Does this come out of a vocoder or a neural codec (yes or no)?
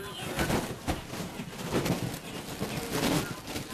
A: no